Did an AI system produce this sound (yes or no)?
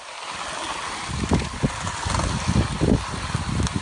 no